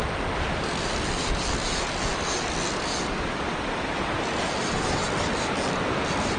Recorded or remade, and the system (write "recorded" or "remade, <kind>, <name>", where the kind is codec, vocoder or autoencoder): recorded